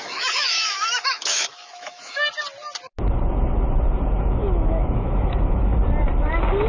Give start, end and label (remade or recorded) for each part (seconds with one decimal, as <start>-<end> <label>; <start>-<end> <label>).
0.0-2.2 remade; 2.2-4.2 recorded; 4.2-5.7 remade; 5.7-6.7 recorded